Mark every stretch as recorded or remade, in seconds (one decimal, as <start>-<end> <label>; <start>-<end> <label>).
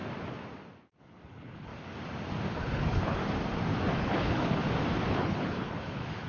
0.0-1.0 recorded; 1.0-1.7 remade; 1.7-2.5 recorded; 2.5-3.2 remade; 3.2-3.9 recorded; 3.9-4.6 remade; 4.6-5.1 recorded; 5.1-6.3 remade